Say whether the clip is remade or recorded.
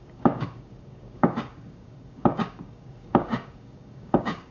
remade